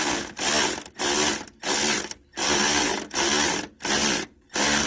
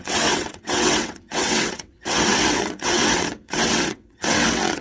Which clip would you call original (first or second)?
first